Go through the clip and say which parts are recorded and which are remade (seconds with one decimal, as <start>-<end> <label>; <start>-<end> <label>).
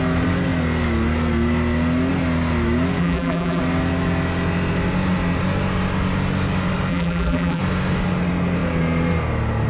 0.0-3.0 recorded; 3.0-3.6 remade; 3.6-6.9 recorded; 6.9-7.6 remade; 7.6-9.7 recorded